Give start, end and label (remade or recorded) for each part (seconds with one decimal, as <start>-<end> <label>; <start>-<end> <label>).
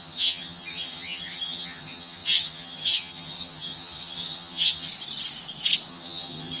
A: 0.0-4.9 remade; 4.9-5.9 recorded; 5.9-6.6 remade